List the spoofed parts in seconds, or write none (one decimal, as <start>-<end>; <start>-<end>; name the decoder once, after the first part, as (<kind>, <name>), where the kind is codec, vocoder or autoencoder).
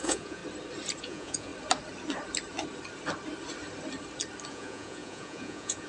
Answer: 0.0-0.4 (vocoder, Vocos); 1.0-1.5; 4.5-5.9